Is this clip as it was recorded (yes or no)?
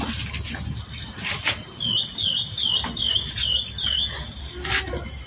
yes